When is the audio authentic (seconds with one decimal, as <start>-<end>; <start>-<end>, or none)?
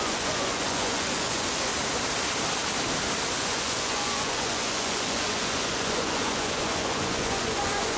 1.7-3.4